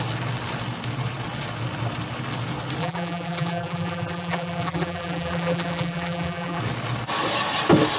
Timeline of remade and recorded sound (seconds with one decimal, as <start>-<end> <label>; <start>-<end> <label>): 0.0-2.8 recorded; 2.8-6.6 remade; 6.6-8.0 recorded